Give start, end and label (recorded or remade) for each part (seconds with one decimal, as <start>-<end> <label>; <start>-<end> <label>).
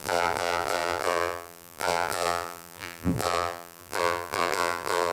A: 0.0-5.1 remade